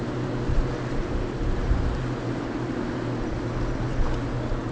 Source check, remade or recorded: recorded